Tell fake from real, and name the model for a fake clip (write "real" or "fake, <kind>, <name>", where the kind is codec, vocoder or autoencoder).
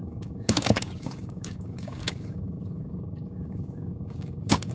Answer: fake, codec, DAC